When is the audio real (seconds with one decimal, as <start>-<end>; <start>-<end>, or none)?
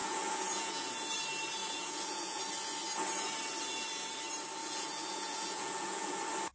1.0-1.6; 2.4-4.6; 6.1-6.5